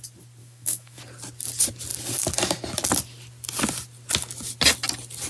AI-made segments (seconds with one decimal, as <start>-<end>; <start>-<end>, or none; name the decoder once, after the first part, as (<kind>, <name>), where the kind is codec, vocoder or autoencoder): 0.4-1.0 (autoencoder, DAC-VAE)